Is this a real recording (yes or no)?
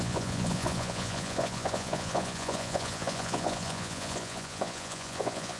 no